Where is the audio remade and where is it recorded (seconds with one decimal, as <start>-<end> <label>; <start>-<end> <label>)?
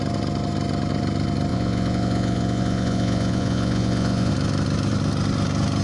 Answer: 0.0-1.5 recorded; 1.5-4.3 remade; 4.3-5.8 recorded